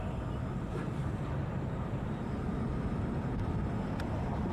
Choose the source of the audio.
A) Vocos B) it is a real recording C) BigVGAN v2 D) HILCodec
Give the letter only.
C